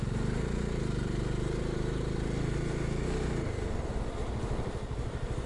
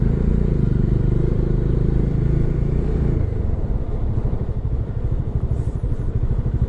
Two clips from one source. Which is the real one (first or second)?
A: first